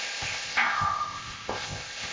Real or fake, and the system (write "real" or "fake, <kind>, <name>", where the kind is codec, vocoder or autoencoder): fake, codec, ZipCodec